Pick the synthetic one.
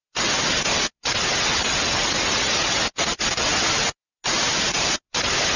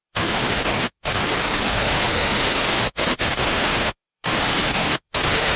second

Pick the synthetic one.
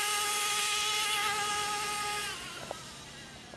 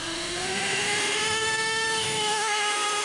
second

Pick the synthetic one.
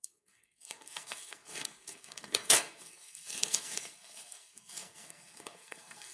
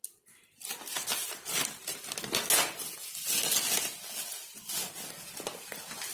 first